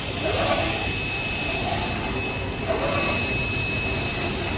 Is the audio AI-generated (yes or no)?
no